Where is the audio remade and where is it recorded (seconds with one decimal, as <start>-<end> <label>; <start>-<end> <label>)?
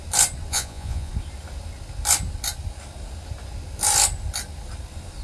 0.0-0.5 recorded; 0.5-1.1 remade; 1.1-5.2 recorded